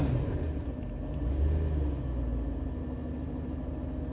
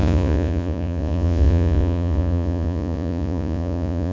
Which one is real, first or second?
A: first